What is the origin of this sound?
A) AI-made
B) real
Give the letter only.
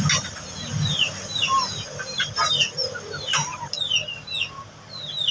B